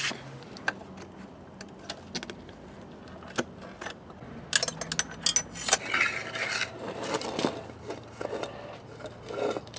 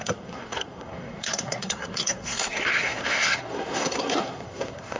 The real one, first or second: first